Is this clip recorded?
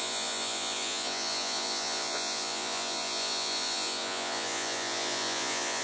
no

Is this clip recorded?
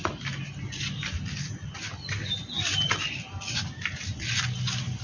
yes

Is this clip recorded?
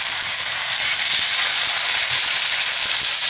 yes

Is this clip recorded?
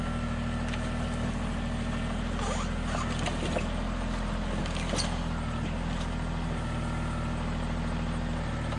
yes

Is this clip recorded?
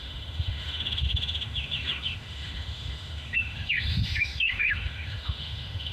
no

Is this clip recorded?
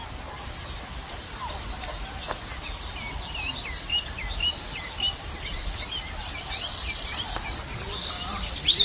yes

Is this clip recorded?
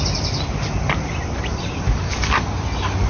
no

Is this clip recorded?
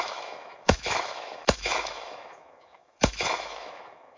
no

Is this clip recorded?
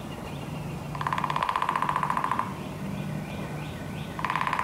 yes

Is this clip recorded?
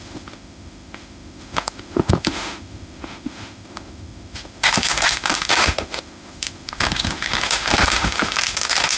no